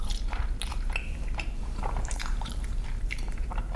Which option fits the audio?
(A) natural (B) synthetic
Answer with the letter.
B